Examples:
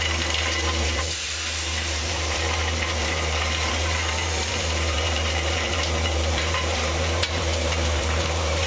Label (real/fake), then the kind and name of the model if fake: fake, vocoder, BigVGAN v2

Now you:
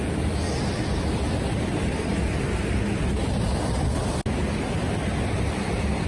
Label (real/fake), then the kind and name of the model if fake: real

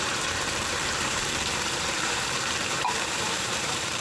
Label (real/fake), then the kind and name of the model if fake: fake, vocoder, BigVGAN v2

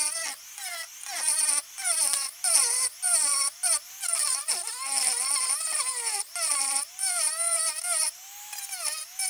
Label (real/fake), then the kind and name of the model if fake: fake, vocoder, BigVGAN v2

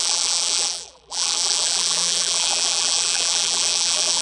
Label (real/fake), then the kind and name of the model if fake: fake, vocoder, BigVGAN v2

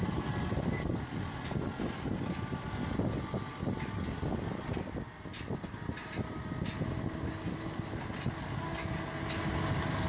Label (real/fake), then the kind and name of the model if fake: real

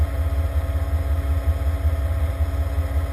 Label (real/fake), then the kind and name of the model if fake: real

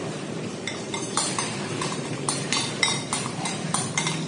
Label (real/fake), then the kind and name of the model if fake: fake, vocoder, BigVGAN v2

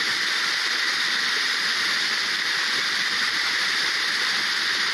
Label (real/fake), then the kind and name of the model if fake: fake, vocoder, BigVGAN v2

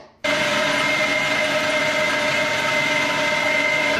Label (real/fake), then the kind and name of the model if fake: real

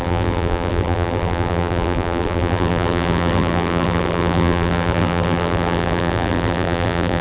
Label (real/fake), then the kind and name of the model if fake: fake, vocoder, BigVGAN v2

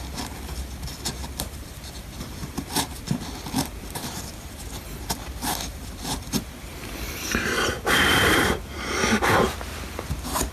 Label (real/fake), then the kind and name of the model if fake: fake, vocoder, BigVGAN v2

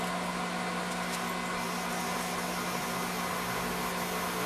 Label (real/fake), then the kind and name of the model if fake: real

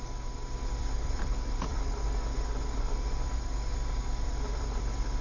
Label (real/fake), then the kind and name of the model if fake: fake, vocoder, BigVGAN v2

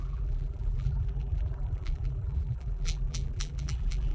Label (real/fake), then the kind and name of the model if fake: fake, vocoder, BigVGAN v2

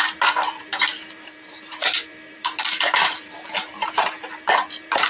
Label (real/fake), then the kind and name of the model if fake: fake, vocoder, BigVGAN v2